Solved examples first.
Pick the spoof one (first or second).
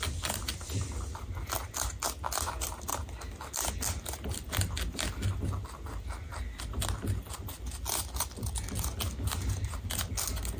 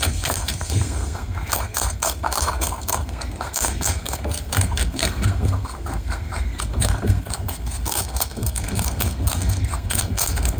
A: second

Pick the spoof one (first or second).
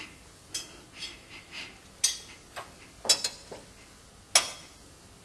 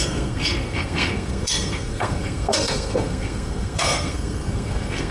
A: second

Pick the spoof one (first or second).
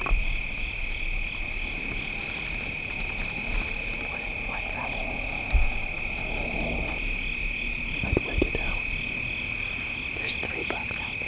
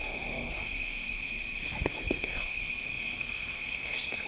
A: second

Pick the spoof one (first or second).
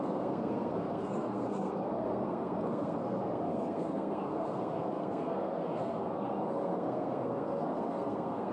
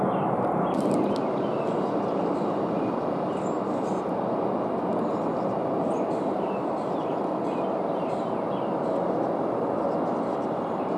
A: first